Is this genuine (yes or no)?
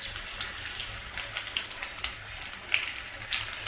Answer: yes